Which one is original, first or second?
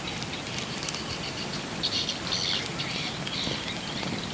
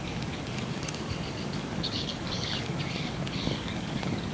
first